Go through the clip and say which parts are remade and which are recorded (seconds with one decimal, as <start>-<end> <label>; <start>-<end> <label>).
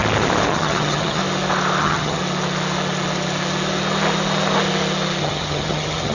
0.0-0.5 recorded; 0.5-1.2 remade; 1.2-1.8 recorded; 1.8-2.2 remade; 2.2-5.2 recorded; 5.2-6.1 remade